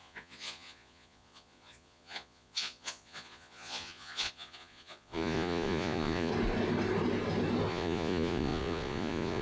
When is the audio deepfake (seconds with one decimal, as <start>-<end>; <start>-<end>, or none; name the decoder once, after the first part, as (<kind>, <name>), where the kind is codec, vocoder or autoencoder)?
0.0-6.3 (vocoder, Vocos); 7.7-9.4